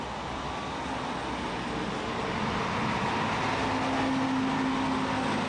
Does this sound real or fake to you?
real